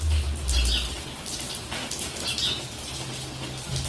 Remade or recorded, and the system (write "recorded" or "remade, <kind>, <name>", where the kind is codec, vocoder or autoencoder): recorded